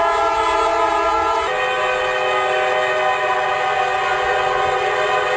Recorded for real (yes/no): yes